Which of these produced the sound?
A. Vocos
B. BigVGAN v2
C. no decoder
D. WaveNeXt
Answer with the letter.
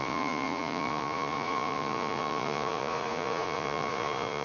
A